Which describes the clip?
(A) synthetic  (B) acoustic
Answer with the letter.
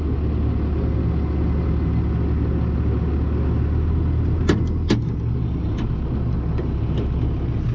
B